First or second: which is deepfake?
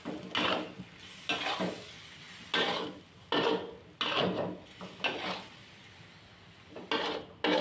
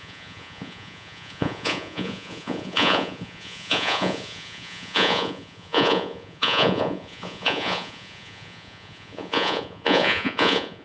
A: second